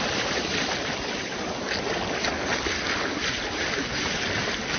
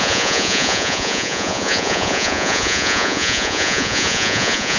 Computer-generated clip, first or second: second